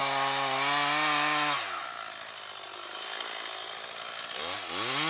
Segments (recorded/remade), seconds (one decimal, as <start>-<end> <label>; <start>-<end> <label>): 0.0-5.1 recorded